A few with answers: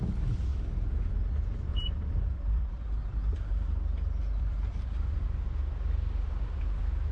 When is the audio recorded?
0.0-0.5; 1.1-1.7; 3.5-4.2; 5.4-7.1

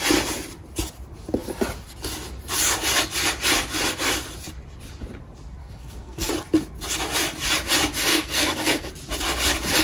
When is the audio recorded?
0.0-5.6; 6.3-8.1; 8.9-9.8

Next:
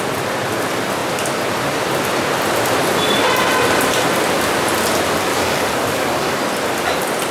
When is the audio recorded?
0.0-5.3; 6.4-7.3

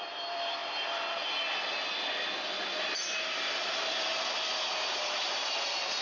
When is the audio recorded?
0.6-4.2

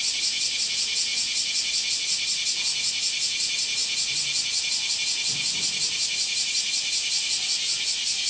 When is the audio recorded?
0.0-8.3

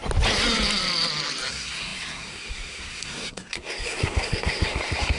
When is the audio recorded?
0.0-1.5

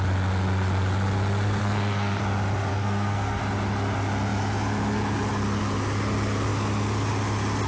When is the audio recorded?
0.0-1.6; 2.2-2.7; 3.4-7.7